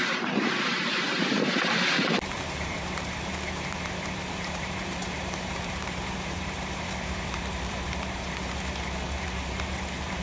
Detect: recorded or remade remade